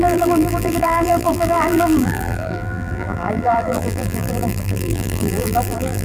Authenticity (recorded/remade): remade